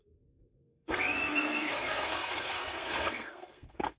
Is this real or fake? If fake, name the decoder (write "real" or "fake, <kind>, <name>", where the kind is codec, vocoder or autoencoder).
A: fake, codec, SNAC